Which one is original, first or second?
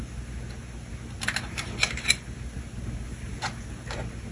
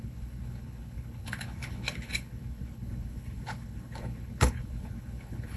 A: first